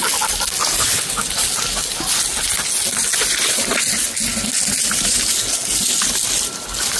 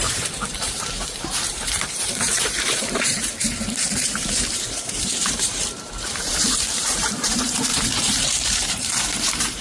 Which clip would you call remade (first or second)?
second